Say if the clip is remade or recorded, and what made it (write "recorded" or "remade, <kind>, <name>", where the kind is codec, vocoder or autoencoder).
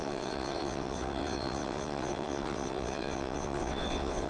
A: remade, vocoder, WaveNeXt